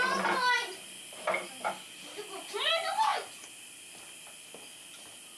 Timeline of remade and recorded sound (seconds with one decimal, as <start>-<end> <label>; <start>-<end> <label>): 0.0-5.4 recorded